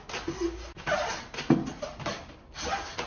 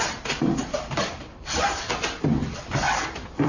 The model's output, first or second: second